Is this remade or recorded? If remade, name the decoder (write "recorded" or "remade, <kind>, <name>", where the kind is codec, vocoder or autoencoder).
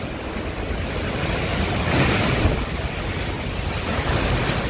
recorded